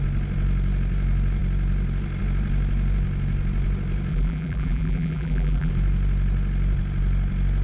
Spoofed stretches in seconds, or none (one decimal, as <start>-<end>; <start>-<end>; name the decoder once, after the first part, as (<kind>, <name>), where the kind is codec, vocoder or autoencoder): 4.1-5.7 (vocoder, BigVGAN v2)